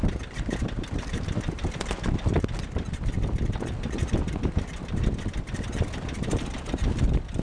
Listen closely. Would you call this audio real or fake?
fake